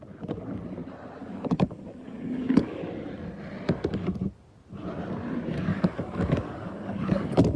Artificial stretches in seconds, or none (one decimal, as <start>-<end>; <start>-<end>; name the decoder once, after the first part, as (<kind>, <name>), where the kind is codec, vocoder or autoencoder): 1.2-2.8 (codec, DAC); 5.7-7.6